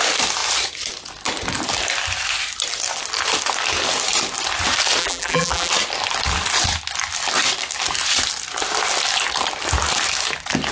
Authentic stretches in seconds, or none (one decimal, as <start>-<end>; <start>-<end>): 0.0-5.0; 5.7-10.7